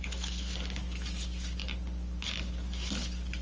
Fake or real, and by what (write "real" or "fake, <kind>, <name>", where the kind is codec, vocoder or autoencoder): real